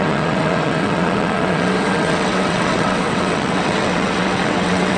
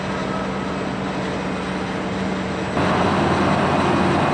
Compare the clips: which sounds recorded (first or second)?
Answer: second